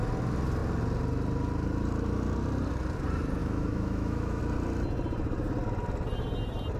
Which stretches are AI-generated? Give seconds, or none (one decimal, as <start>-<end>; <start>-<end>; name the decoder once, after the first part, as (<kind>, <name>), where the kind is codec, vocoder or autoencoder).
3.4-4.4 (autoencoder, DAC-VAE)